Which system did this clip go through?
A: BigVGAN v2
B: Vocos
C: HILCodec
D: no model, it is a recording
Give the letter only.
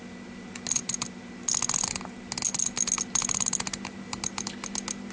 D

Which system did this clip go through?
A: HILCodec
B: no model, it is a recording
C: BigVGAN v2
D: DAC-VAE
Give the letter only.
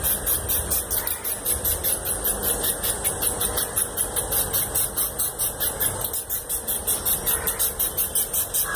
B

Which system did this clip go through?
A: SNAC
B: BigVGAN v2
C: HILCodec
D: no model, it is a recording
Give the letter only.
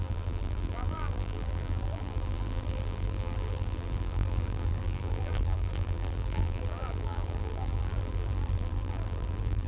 B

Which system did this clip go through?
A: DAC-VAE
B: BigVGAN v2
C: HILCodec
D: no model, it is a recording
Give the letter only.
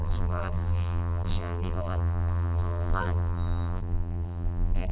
B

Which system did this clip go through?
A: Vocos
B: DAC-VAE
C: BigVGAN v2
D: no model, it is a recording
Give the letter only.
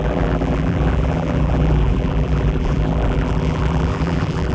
C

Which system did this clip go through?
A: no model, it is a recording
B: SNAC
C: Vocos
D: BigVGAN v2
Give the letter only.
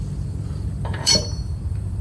D